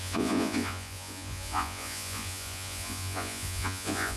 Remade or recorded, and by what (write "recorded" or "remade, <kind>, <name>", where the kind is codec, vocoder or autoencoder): remade, vocoder, Vocos